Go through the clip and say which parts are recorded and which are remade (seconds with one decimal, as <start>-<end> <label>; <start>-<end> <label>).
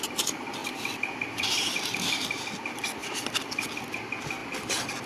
0.0-0.6 recorded; 0.6-2.4 remade; 2.4-3.0 recorded; 3.0-3.9 remade; 3.9-5.1 recorded